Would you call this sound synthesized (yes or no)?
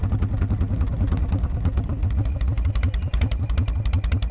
no